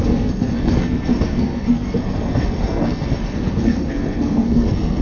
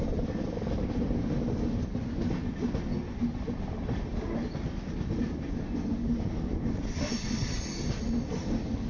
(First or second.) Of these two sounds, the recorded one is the second